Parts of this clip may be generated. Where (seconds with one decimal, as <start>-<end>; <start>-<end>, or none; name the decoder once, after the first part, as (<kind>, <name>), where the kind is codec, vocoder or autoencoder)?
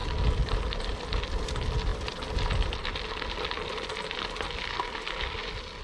none